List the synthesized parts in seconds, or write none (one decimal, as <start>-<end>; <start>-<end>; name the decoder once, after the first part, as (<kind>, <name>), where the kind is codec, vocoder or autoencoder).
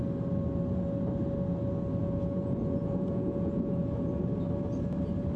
2.0-4.1 (vocoder, Vocos)